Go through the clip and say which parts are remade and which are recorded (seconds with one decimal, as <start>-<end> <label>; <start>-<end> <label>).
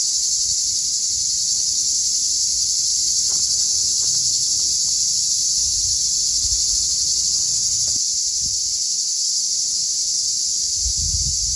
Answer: 0.0-11.6 recorded